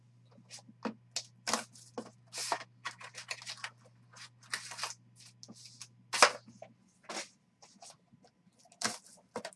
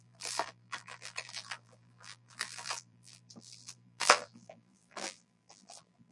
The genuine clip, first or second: first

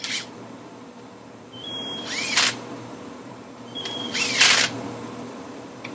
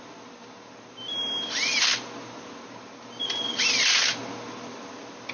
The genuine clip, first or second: second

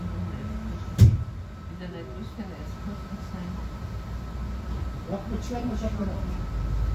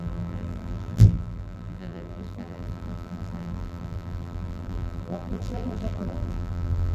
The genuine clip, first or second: first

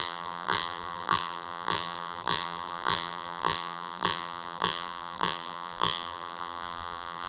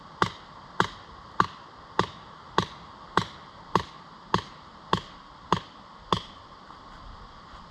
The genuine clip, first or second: second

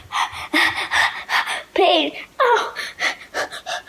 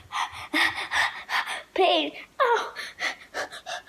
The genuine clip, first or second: second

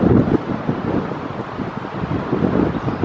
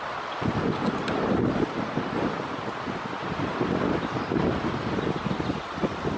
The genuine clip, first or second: second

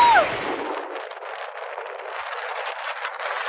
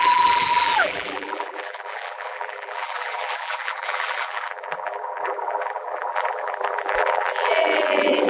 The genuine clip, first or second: first